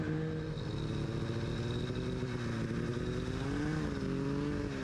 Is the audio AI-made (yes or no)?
no